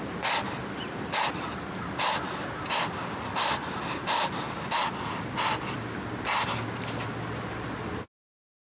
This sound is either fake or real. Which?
real